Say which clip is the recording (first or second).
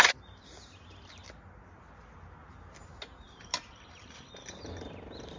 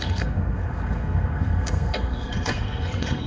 first